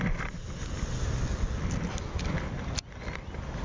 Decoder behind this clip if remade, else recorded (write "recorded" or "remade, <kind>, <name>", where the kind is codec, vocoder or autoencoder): recorded